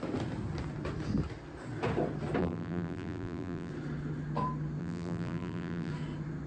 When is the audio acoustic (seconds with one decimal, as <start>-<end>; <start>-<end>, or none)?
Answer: 0.0-2.4; 3.7-4.8; 5.9-6.5